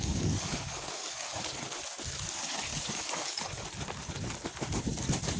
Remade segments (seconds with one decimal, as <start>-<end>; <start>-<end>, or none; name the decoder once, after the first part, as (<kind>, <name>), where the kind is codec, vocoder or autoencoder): 0.0-1.3 (codec, DAC); 2.7-3.4